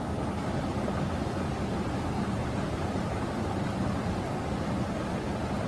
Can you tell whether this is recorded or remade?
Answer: recorded